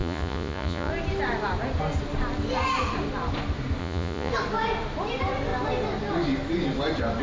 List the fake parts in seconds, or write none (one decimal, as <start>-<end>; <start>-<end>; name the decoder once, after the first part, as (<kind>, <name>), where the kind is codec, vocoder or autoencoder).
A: 0.0-0.9 (vocoder, Vocos); 3.8-4.3